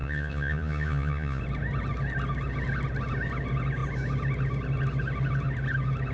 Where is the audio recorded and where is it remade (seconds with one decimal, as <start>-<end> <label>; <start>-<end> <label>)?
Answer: 0.0-1.4 remade; 1.4-6.1 recorded